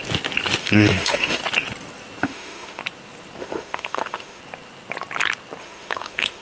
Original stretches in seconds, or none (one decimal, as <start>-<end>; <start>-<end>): 0.0-0.6; 1.4-2.2; 2.8-3.4; 4.4-5.6